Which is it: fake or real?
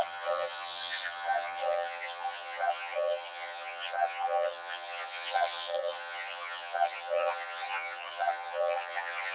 fake